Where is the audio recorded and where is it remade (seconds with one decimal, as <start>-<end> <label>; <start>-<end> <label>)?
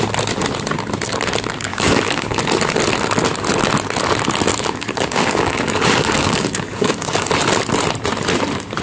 0.0-1.7 recorded; 1.7-2.4 remade; 2.4-4.5 recorded; 4.5-7.3 remade; 7.3-8.8 recorded